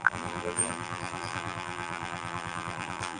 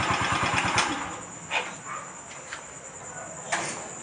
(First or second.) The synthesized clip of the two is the first